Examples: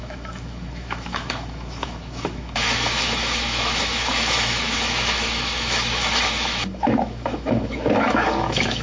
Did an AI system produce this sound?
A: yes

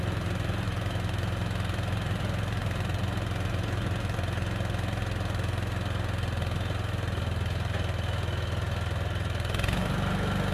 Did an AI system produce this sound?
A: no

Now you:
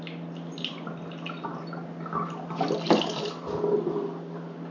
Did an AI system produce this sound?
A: no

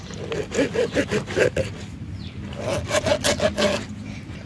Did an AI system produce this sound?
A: no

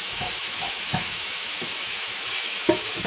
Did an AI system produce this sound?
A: yes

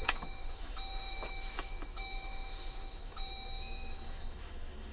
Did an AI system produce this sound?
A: yes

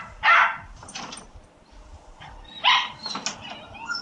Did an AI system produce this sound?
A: no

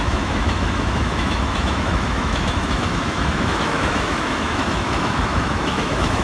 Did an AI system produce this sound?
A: yes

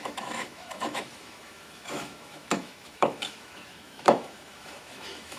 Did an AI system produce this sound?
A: yes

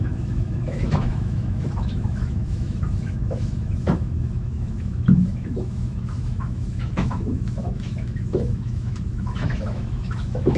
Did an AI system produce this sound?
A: yes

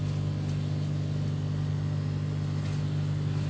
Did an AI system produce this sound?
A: no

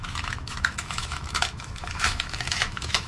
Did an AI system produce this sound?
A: yes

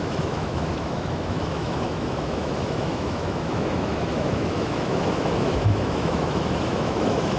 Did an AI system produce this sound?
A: yes